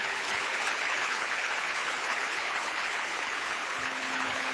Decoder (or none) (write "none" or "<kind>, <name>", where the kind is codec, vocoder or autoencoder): codec, HILCodec